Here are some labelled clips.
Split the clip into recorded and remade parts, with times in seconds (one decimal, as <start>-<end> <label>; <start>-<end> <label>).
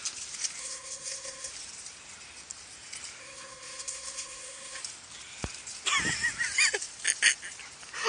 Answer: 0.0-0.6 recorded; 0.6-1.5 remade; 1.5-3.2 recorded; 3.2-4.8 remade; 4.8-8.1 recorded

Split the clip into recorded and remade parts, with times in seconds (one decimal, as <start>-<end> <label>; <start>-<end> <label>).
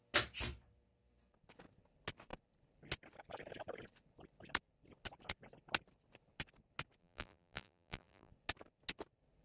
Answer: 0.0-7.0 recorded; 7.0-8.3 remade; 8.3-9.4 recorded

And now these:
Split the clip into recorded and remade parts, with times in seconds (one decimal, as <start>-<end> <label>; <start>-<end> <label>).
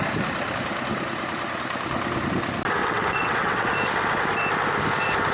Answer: 0.0-2.8 recorded; 2.8-3.7 remade; 3.7-5.3 recorded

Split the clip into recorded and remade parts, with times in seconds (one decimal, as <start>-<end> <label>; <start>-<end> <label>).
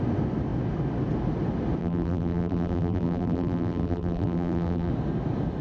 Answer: 0.0-1.8 recorded; 1.8-4.9 remade; 4.9-5.6 recorded